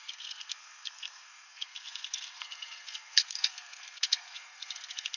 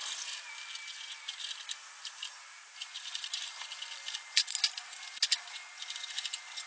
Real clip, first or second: second